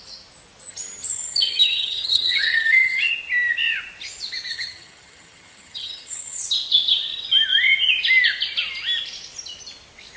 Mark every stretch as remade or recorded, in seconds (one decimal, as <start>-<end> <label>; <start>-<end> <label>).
0.0-0.7 recorded; 0.7-3.1 remade; 3.1-4.5 recorded; 4.5-6.5 remade; 6.5-10.2 recorded